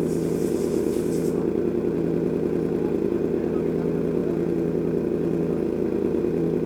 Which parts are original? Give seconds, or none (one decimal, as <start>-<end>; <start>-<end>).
0.0-6.7